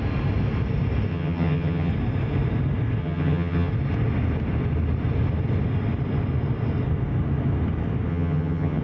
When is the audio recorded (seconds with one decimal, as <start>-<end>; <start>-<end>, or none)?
0.0-1.1; 1.9-3.0; 3.7-8.1